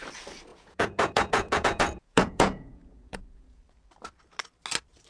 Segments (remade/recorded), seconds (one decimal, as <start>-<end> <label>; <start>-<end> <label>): 0.0-0.5 recorded; 0.5-3.6 remade; 3.6-5.1 recorded

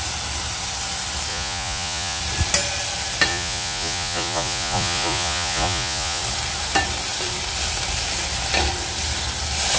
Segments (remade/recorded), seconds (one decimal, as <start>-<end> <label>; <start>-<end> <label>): 0.0-1.3 recorded; 1.3-2.2 remade; 2.2-3.3 recorded; 3.3-6.2 remade; 6.2-9.8 recorded

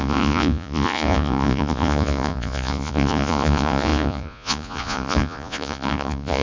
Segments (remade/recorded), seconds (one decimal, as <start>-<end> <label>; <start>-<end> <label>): 0.0-6.4 remade

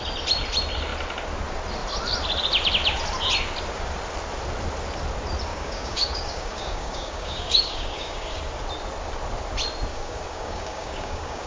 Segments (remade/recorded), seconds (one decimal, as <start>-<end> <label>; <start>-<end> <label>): 0.0-5.5 recorded; 5.5-8.4 remade; 8.4-9.9 recorded; 9.9-11.5 remade

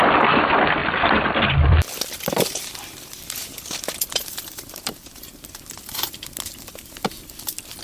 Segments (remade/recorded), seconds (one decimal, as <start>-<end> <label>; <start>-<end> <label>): 0.0-0.8 recorded; 0.8-2.6 remade; 2.6-7.8 recorded

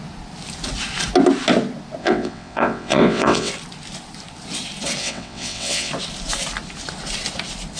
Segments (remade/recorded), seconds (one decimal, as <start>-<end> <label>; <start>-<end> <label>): 0.0-2.0 recorded; 2.0-3.5 remade; 3.5-5.0 recorded; 5.0-5.9 remade; 5.9-7.8 recorded

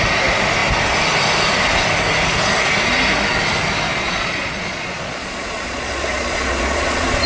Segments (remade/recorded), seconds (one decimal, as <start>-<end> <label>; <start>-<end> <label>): 0.0-3.9 recorded; 3.9-7.3 remade

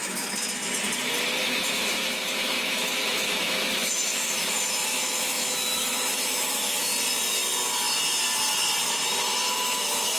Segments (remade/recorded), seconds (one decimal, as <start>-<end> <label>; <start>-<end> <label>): 0.0-0.6 remade; 0.6-1.4 recorded; 1.4-6.9 remade; 6.9-9.5 recorded; 9.5-10.2 remade